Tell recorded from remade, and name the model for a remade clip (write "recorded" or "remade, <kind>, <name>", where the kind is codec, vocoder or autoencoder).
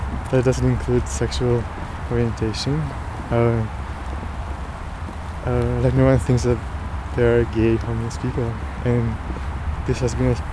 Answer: recorded